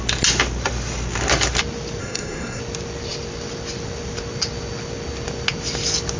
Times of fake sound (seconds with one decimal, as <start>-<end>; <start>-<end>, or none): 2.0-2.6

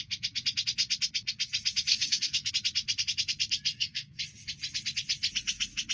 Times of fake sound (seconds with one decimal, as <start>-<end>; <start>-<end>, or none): 1.9-2.5; 3.7-4.2

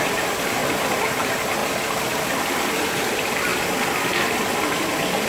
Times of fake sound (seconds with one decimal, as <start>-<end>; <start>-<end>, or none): none

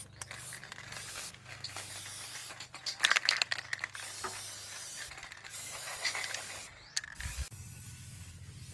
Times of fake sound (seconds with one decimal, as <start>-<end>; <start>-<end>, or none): 1.1-1.9

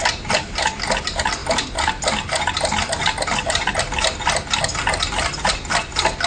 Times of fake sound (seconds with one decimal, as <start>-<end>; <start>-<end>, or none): none

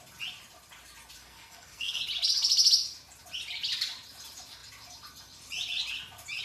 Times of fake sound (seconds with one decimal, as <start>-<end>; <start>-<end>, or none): 1.2-2.0

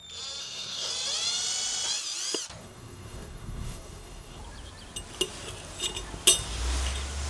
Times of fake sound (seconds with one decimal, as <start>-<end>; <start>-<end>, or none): 0.4-0.9; 2.6-4.4

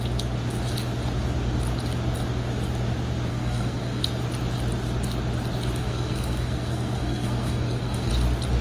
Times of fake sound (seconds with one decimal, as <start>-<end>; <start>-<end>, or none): 3.3-4.0; 5.8-8.1